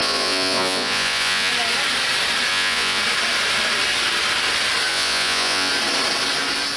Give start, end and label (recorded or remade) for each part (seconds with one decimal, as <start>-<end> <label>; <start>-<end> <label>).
0.0-1.5 remade; 1.5-2.5 recorded; 2.5-3.0 remade; 3.0-4.9 recorded; 4.9-5.7 remade; 5.7-6.8 recorded